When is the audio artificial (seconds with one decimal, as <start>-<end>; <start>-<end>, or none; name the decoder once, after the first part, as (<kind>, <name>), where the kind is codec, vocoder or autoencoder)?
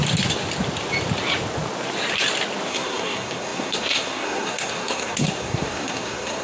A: 2.7-6.4 (codec, SNAC)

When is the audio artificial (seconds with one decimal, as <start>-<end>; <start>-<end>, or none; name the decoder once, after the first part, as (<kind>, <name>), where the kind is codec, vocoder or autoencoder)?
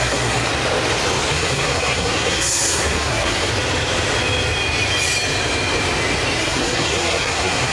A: 0.0-0.5 (codec, SNAC); 1.3-3.5; 6.4-7.7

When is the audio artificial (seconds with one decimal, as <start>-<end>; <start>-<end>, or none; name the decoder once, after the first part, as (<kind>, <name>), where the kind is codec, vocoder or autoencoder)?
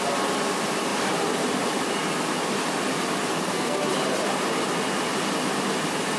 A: 3.3-3.9 (codec, SNAC)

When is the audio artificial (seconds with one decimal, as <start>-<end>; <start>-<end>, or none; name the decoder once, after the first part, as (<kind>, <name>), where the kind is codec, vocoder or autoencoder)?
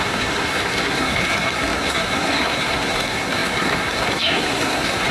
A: 0.0-5.1 (codec, SNAC)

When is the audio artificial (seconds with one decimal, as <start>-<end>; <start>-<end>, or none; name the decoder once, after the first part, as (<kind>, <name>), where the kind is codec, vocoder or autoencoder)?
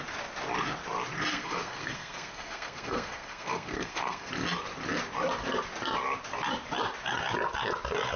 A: 1.3-4.3 (codec, SNAC)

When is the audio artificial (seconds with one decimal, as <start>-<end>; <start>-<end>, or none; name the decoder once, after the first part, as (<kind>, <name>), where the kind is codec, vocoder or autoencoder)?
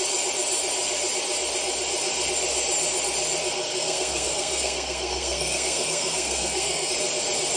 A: 3.7-6.9 (codec, SNAC)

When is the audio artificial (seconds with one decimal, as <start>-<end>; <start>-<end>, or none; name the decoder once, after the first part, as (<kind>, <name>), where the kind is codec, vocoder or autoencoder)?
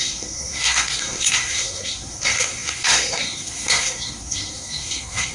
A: 0.0-5.3 (codec, SNAC)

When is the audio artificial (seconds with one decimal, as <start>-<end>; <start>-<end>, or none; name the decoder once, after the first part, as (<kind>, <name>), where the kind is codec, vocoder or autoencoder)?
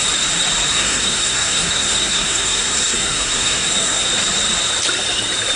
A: 0.7-4.1 (codec, SNAC)